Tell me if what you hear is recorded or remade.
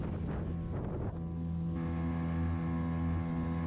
recorded